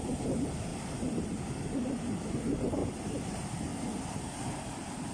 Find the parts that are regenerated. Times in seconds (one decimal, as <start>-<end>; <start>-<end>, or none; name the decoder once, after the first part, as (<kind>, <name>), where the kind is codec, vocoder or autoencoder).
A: none